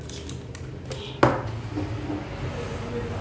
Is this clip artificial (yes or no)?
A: no